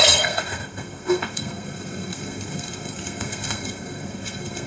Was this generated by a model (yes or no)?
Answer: yes